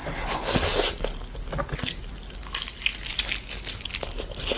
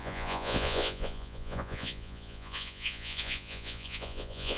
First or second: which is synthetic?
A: second